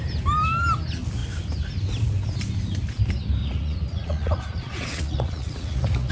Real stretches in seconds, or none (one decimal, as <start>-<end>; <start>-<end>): 0.0-3.4